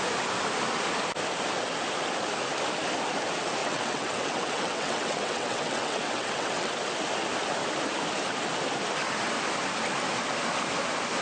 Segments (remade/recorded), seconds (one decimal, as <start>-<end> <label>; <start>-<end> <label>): 0.0-3.6 recorded; 3.6-6.7 remade; 6.7-11.2 recorded